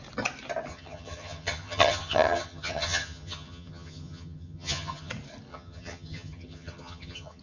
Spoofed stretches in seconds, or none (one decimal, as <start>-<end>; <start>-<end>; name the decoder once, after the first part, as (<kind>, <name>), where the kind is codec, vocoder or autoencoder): 0.7-5.1 (vocoder, HiFi-GAN); 5.5-7.4